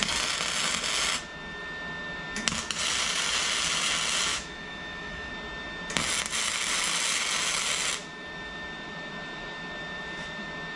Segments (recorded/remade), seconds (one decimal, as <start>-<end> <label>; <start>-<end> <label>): 0.0-4.3 recorded; 4.3-5.3 remade; 5.3-10.8 recorded